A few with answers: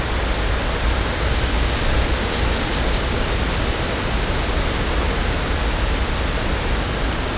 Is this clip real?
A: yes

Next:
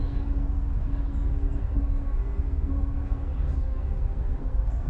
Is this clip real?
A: no